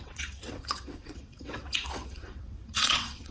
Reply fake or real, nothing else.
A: fake